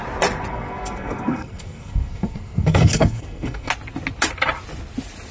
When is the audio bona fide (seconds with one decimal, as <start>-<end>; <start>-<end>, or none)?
0.0-0.5; 3.7-5.3